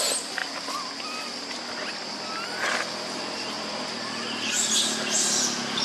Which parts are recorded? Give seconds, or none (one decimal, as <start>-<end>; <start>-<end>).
0.0-5.8